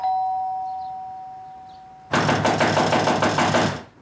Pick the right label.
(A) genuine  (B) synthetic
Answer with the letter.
A